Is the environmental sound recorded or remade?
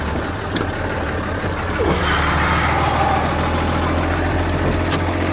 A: recorded